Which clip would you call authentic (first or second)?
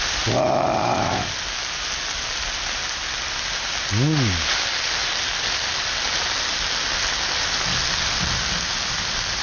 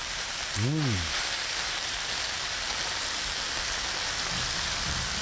first